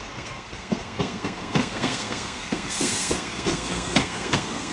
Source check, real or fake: fake